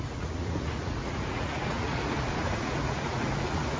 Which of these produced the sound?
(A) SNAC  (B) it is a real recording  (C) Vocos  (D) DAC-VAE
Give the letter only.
C